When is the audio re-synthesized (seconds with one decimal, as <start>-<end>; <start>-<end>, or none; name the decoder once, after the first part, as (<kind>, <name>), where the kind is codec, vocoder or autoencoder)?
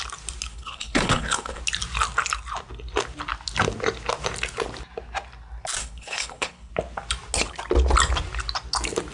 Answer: 0.5-1.6 (codec, HILCodec); 5.8-6.7